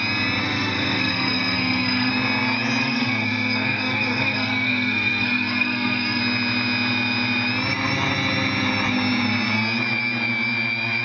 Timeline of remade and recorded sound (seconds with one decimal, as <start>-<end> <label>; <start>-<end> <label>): 0.0-0.4 recorded; 0.4-2.1 remade; 2.1-2.8 recorded; 2.8-6.2 remade; 6.2-11.0 recorded